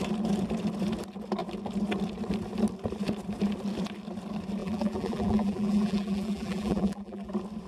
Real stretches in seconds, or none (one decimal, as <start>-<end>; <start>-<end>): 0.0-4.6; 7.3-7.7